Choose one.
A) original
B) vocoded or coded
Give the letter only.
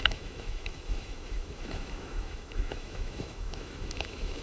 B